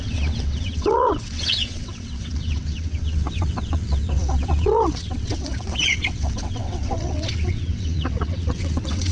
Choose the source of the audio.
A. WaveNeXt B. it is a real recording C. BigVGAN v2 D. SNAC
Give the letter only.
A